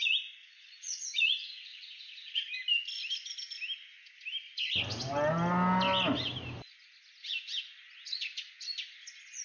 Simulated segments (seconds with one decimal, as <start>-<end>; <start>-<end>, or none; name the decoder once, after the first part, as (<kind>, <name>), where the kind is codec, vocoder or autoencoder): 0.4-1.0 (vocoder, Vocos); 1.4-2.5

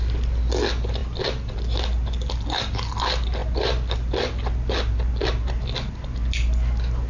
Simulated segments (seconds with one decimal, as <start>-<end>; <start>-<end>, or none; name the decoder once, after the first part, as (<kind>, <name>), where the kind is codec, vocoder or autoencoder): none

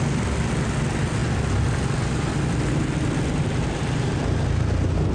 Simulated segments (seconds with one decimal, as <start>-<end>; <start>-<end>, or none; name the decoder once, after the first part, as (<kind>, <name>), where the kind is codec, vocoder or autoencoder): none

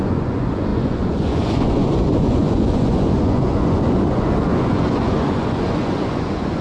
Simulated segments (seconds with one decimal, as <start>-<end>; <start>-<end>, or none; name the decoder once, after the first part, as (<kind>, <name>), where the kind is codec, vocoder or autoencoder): 0.0-6.6 (vocoder, Vocos)

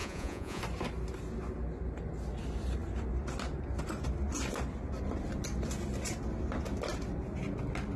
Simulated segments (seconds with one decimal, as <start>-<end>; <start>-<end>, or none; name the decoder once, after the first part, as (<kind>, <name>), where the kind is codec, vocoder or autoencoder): 0.0-0.6 (vocoder, Vocos)

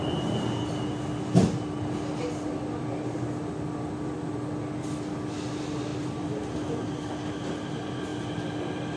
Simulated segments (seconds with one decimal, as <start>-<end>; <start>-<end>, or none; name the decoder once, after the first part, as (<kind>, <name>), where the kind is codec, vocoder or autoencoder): none